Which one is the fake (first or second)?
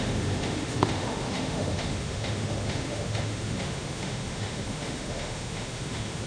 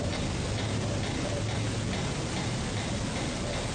first